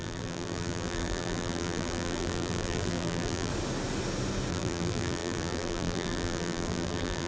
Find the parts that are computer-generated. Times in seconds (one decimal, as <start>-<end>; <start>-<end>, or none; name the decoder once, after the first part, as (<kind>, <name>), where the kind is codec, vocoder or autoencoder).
0.0-3.5 (vocoder, BigVGAN v2); 4.5-7.3